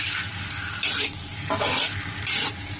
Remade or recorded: recorded